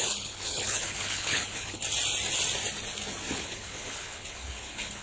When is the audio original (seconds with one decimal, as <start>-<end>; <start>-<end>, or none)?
1.8-3.3